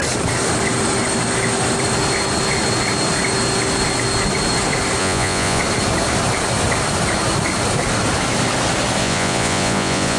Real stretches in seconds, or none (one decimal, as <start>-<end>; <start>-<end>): 0.0-5.0; 5.6-9.0